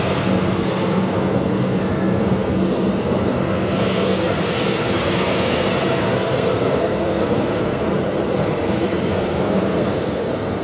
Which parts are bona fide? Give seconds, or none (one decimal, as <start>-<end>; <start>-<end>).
7.9-8.4

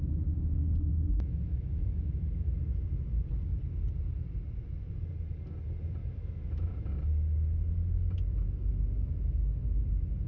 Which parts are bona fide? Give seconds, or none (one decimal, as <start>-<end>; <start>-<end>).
0.0-0.9; 2.5-6.0; 6.9-10.3

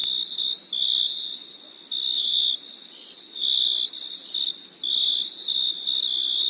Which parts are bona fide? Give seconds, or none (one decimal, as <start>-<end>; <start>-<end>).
0.0-6.5